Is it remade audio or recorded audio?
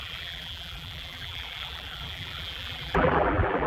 remade